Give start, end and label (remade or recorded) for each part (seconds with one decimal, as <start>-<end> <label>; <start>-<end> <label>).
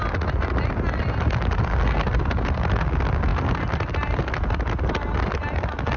0.0-6.0 recorded